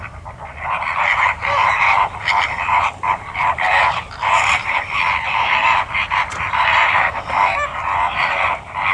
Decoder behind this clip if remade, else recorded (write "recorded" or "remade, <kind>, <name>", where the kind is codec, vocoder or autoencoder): remade, vocoder, BigVGAN v2